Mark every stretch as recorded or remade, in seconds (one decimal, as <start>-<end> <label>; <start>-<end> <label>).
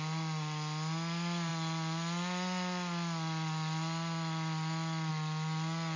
0.0-6.0 recorded